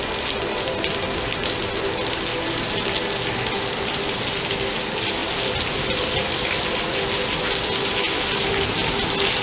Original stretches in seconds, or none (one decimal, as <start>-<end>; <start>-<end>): 0.0-9.4